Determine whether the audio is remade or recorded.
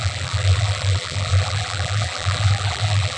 remade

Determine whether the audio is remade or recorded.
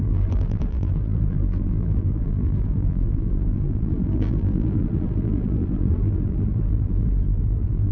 remade